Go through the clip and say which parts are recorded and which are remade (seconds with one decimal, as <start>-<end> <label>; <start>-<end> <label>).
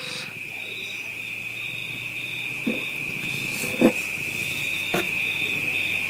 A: 0.0-4.7 recorded; 4.7-5.4 remade; 5.4-6.1 recorded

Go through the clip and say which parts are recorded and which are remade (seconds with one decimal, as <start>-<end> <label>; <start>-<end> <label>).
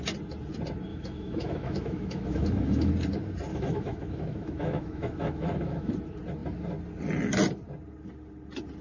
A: 0.0-0.9 recorded; 0.9-2.9 remade; 2.9-3.5 recorded; 3.5-5.9 remade; 5.9-8.8 recorded